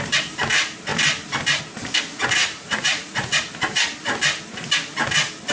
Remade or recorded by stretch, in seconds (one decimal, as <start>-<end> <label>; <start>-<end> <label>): 0.0-2.4 recorded; 2.4-3.4 remade; 3.4-5.5 recorded